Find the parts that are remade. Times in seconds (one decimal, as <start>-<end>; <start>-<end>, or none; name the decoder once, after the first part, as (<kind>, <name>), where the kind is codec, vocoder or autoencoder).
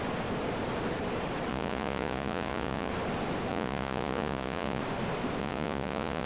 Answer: 1.5-2.9 (vocoder, Vocos); 3.5-4.8; 5.4-6.3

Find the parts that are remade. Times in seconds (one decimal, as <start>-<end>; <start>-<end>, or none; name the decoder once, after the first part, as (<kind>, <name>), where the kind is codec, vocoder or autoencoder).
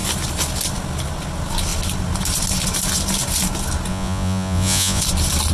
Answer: 3.9-5.0 (vocoder, Vocos)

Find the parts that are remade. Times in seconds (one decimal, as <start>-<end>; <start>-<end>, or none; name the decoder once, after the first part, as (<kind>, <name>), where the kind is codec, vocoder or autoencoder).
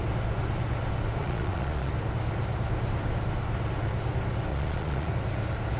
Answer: 1.2-1.9 (vocoder, Vocos); 4.5-5.1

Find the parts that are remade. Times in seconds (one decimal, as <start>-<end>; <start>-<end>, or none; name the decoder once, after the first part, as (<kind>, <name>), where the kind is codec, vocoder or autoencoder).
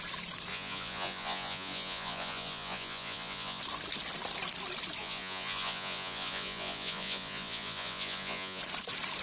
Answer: 0.5-3.6 (vocoder, Vocos); 5.0-8.6